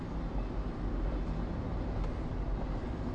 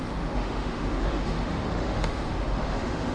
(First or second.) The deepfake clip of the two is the second